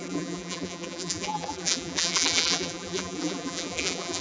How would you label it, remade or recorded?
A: remade